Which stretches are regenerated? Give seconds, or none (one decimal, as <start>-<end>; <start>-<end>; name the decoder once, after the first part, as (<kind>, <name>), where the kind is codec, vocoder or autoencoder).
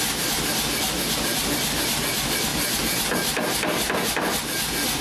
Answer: none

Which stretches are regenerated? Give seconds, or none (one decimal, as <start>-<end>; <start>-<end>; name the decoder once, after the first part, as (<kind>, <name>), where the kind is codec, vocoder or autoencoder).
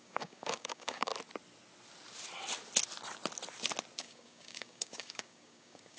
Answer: 0.0-1.1 (codec, DAC); 4.0-6.0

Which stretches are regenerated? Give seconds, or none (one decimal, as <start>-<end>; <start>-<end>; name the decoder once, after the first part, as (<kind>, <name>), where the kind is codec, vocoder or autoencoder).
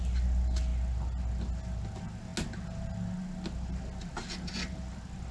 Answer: none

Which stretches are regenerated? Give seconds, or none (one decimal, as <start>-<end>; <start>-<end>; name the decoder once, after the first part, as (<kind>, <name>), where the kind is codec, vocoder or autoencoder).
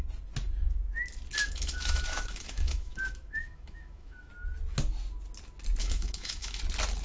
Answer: 1.4-4.3 (autoencoder, DAC-VAE); 5.8-6.6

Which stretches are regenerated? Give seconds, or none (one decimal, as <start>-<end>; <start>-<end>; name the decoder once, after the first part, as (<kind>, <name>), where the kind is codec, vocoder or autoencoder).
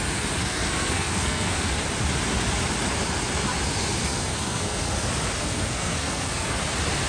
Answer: 0.4-1.7 (codec, SNAC); 4.0-4.9; 5.4-6.6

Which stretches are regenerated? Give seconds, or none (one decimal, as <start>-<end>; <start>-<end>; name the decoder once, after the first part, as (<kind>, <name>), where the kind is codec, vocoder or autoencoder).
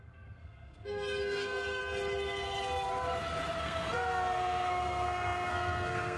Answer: 0.0-1.8 (codec, SNAC); 3.6-6.2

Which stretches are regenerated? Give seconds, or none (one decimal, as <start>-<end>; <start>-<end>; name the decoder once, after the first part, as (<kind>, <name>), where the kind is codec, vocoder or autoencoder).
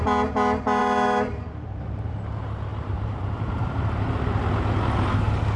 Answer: 0.8-2.1 (vocoder, BigVGAN v2); 2.7-4.5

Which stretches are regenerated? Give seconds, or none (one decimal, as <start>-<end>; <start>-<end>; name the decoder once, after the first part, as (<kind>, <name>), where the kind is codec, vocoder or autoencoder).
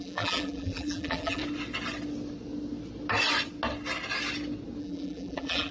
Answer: 0.0-1.4 (vocoder, BigVGAN v2); 4.8-5.7